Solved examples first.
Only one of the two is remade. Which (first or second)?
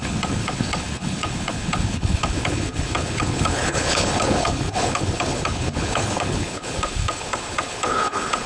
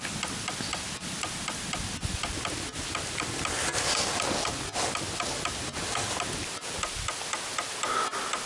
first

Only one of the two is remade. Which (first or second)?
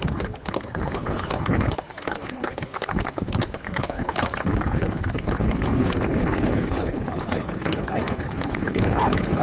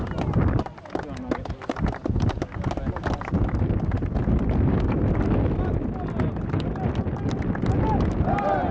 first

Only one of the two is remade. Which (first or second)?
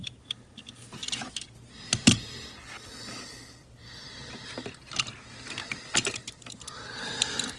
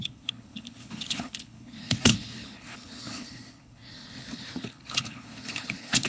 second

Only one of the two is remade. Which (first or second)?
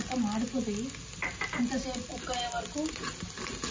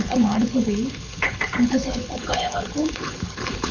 second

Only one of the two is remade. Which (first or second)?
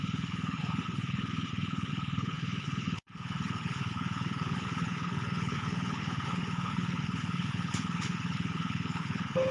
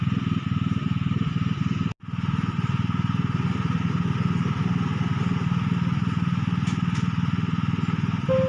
first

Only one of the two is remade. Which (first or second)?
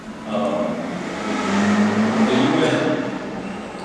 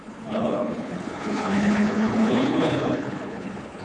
second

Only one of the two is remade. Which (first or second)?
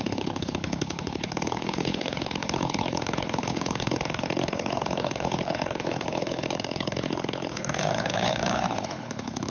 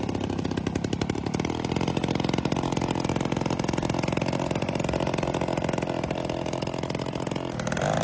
first